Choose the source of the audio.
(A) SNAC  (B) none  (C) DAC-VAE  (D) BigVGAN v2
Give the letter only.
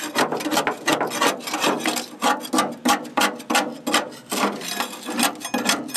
B